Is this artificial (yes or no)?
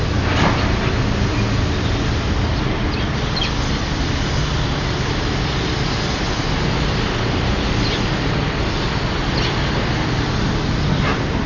no